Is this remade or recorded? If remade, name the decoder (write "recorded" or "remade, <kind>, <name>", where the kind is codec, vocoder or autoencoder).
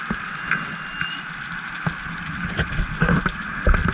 recorded